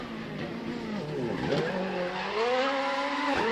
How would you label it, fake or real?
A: real